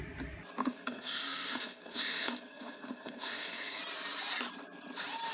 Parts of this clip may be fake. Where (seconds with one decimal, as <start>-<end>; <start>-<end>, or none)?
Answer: 0.6-3.8